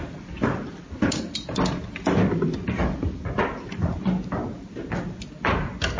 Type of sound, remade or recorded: recorded